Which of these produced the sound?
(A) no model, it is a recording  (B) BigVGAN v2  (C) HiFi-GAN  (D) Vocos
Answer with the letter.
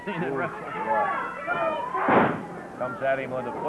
A